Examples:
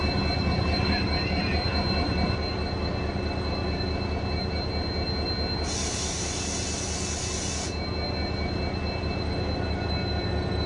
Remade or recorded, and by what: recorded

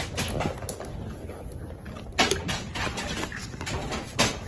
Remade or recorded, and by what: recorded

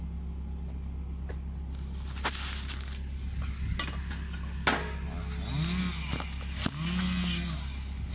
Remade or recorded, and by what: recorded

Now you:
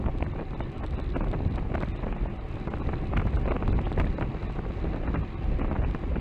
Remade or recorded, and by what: recorded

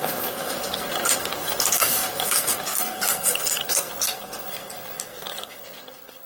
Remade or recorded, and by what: remade, codec, SNAC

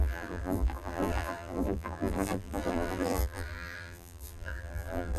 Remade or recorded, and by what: remade, vocoder, BigVGAN v2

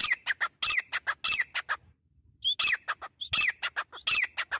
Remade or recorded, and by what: recorded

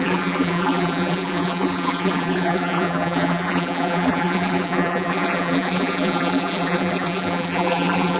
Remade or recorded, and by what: remade, vocoder, BigVGAN v2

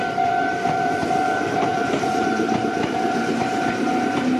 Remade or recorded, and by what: remade, vocoder, BigVGAN v2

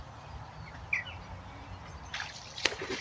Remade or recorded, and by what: recorded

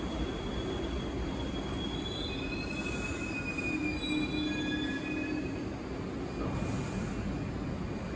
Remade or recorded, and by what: recorded